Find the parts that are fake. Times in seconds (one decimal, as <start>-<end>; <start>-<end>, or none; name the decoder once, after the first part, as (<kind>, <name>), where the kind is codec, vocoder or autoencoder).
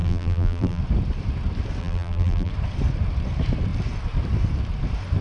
0.0-0.8 (vocoder, BigVGAN v2); 1.8-2.5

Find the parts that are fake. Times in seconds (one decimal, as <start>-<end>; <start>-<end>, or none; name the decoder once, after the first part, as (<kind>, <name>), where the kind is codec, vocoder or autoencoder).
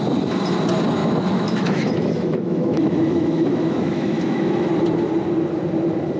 1.0-4.7 (autoencoder, DAC-VAE)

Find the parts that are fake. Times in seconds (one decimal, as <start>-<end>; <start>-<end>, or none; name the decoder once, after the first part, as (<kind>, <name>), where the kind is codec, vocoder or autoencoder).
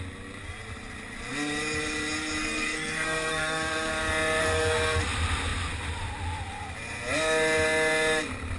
2.4-3.9 (codec, SNAC); 4.4-5.0